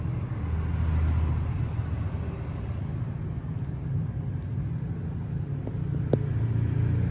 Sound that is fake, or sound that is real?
real